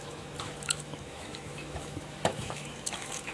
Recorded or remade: remade